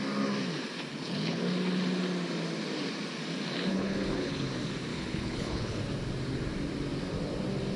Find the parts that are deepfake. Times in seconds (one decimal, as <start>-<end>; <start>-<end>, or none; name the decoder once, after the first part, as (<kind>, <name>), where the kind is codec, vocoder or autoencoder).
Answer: 0.9-1.4 (codec, HILCodec); 3.7-4.5; 4.9-5.8